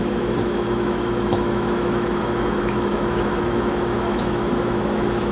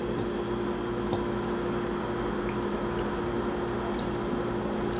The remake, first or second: first